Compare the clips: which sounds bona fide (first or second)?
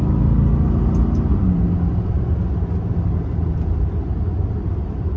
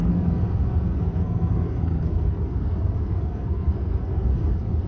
first